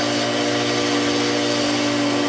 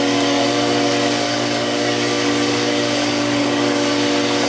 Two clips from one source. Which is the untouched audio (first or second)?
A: first